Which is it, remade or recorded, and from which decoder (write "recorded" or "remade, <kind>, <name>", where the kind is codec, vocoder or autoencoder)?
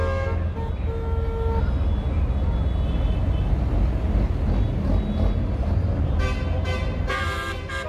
recorded